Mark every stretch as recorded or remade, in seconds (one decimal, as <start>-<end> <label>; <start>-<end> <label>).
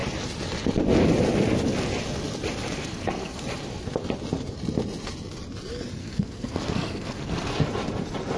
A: 0.0-2.8 recorded; 2.8-3.4 remade; 3.4-6.0 recorded; 6.0-7.5 remade; 7.5-8.4 recorded